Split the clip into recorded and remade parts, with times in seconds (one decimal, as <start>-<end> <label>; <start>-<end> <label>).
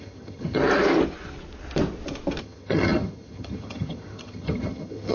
0.0-0.6 remade; 0.6-2.4 recorded; 2.4-5.1 remade